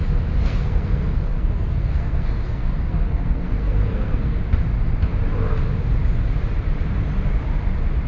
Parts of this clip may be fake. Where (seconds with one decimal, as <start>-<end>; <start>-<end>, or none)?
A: 0.4-4.4